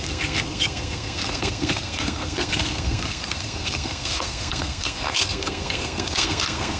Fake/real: fake